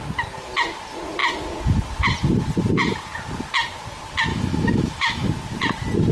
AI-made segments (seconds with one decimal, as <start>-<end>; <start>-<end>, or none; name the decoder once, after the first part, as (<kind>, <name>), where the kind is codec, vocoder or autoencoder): 4.3-5.3 (autoencoder, DAC-VAE)